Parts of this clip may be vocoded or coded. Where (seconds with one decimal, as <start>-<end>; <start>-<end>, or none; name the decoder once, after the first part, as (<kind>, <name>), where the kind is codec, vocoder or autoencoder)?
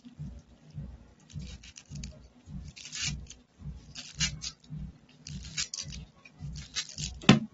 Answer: none